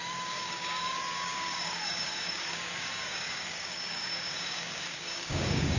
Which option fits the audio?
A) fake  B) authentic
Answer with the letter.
A